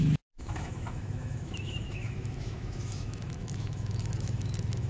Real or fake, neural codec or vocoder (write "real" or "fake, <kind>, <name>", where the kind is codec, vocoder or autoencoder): fake, autoencoder, DAC-VAE